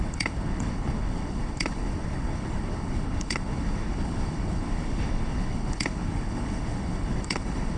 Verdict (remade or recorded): remade